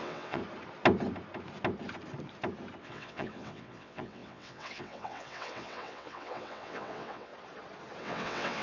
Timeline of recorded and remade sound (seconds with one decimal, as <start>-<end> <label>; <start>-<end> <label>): 0.0-0.4 remade; 0.4-2.8 recorded; 2.8-7.3 remade; 7.3-8.0 recorded; 8.0-8.6 remade